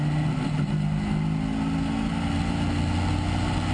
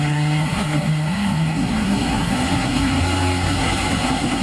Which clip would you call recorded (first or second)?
first